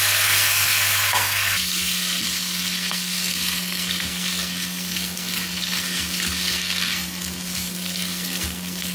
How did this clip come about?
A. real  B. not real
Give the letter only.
B